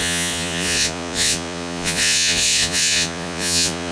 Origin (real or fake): fake